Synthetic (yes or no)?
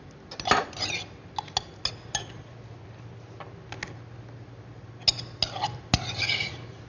no